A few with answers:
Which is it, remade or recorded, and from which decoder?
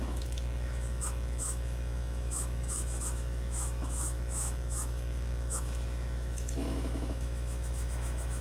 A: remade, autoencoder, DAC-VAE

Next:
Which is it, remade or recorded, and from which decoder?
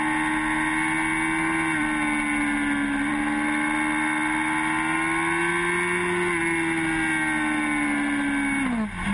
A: recorded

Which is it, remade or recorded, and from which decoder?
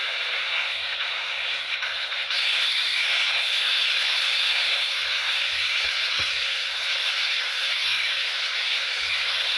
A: remade, codec, SNAC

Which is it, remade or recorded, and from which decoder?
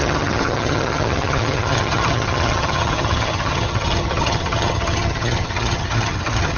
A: remade, vocoder, HiFi-GAN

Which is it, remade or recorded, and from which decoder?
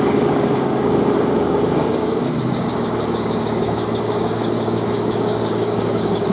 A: remade, codec, DAC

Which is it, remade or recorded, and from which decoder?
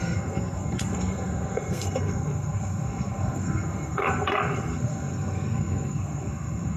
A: remade, codec, SNAC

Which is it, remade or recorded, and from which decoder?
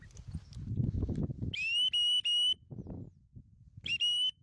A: recorded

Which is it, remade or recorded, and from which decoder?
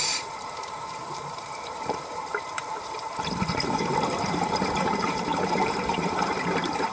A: remade, vocoder, BigVGAN v2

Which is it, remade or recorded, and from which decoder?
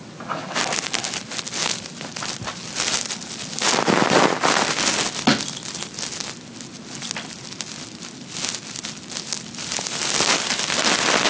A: recorded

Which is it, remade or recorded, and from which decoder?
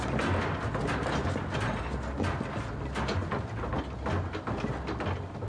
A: recorded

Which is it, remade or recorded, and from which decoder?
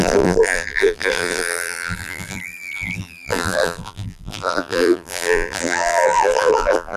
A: remade, vocoder, BigVGAN v2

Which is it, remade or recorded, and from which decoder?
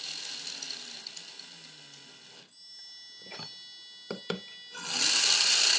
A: recorded